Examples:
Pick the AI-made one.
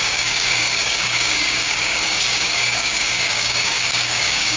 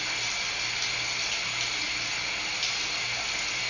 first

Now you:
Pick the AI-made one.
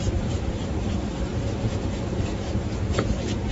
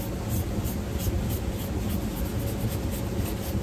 first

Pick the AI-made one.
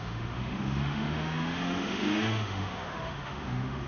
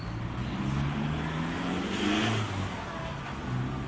first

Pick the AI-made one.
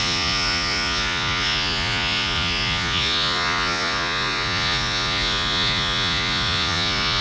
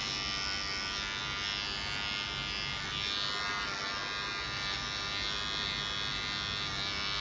first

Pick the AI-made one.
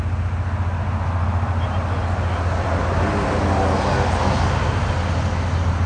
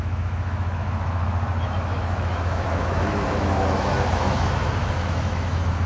second